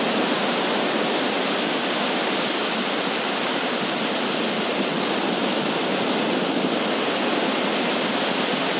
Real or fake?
real